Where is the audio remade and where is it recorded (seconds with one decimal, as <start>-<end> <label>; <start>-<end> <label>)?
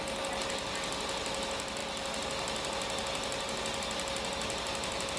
0.0-5.2 recorded